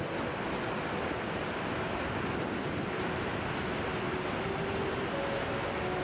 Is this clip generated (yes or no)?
no